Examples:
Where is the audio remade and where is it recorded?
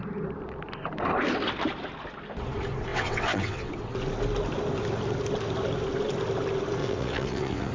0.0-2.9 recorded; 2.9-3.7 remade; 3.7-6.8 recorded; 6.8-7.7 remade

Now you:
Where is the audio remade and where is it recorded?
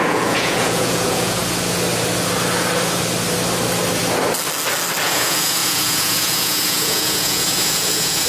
0.0-1.4 remade; 1.4-5.0 recorded; 5.0-8.3 remade